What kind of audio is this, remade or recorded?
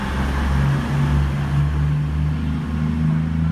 recorded